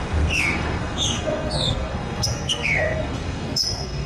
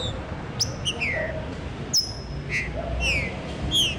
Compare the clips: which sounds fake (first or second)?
first